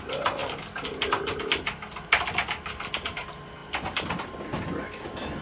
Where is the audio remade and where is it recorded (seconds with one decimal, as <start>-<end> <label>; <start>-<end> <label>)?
0.0-5.4 recorded